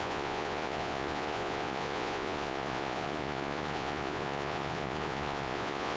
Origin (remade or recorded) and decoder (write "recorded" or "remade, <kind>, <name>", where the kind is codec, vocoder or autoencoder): remade, vocoder, Vocos